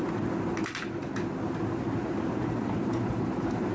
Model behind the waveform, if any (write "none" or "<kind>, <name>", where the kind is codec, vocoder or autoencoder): none